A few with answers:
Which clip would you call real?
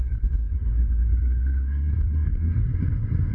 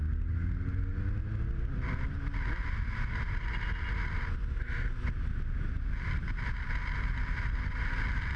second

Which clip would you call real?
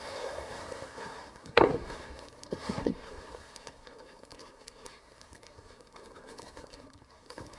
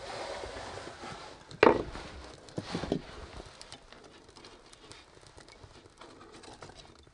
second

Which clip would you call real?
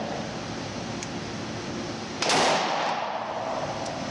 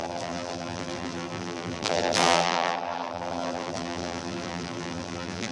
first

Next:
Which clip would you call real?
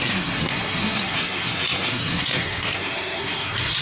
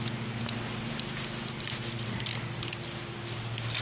second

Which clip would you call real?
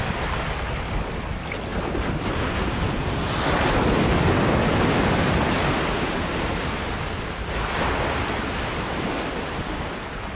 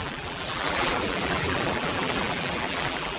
first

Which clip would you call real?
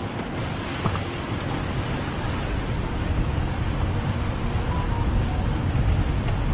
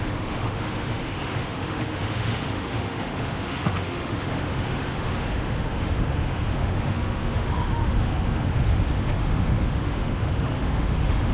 first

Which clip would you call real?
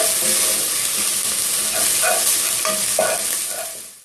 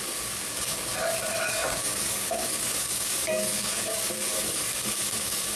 first